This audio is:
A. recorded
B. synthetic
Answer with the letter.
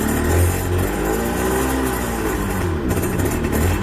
A